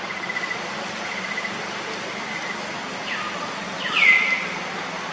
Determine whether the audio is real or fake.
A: real